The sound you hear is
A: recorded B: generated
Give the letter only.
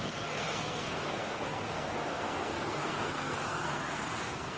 B